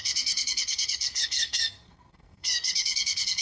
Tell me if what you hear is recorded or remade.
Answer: remade